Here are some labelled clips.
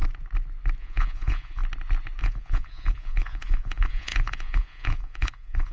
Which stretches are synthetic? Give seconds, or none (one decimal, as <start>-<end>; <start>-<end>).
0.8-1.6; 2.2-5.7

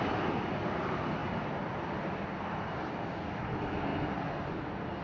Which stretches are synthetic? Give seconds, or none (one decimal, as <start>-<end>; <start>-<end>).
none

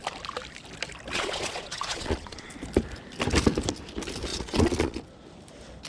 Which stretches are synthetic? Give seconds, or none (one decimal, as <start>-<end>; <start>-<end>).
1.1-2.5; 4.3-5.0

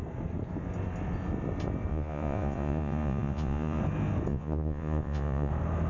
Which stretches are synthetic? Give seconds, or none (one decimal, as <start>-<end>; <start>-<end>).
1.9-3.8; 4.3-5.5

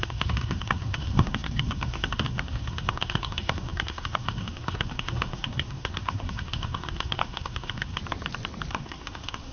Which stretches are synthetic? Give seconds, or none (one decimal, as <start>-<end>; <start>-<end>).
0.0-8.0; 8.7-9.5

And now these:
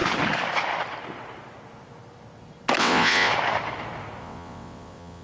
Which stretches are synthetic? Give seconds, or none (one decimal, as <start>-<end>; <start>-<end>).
2.8-3.3; 4.2-5.2